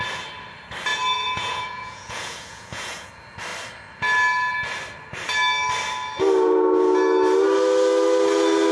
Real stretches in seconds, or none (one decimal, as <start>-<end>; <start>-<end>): 0.0-0.9; 3.1-8.7